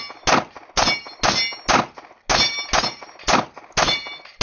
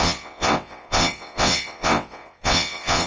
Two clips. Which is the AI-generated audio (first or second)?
second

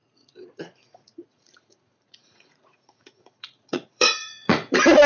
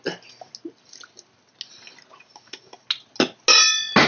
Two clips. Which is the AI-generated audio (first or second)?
first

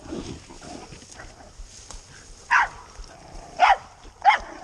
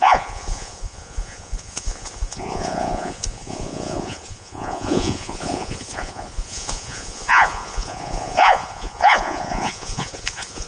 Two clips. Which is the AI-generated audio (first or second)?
second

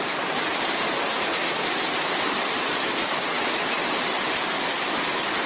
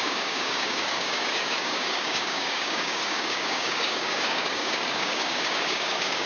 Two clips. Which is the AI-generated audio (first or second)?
second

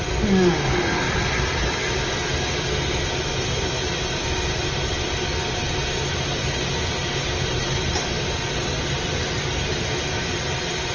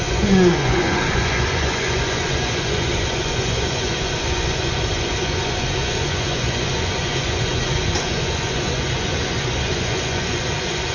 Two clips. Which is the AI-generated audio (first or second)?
second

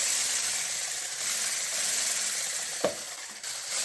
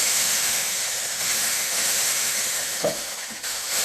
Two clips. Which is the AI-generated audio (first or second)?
second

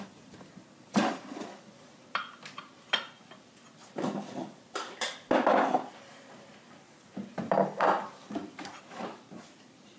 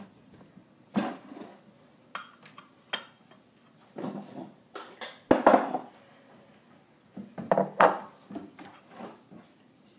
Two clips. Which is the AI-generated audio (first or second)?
first